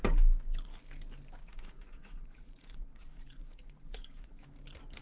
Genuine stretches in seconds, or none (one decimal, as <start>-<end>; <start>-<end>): 0.0-1.4; 4.4-5.0